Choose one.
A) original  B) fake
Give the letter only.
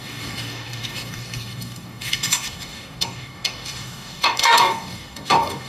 B